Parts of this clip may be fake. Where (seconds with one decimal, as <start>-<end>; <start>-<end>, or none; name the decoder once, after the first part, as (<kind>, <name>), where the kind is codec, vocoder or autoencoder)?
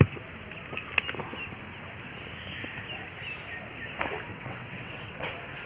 4.3-5.3 (vocoder, WaveNeXt)